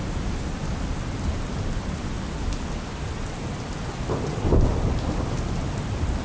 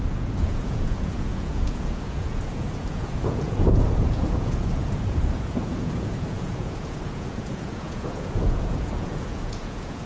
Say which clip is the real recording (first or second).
first